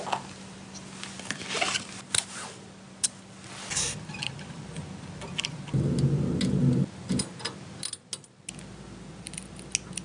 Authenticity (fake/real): real